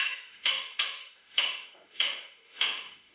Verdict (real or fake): fake